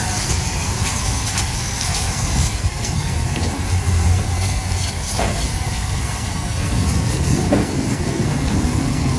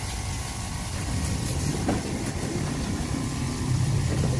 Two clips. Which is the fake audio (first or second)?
first